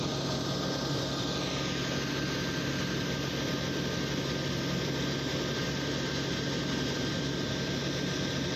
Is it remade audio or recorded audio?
recorded